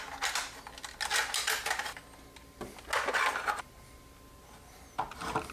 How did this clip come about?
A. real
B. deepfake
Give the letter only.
A